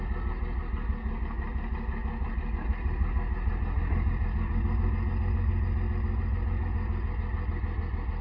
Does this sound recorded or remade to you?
recorded